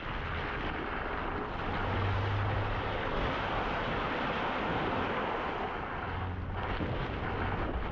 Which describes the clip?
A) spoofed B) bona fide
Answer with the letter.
B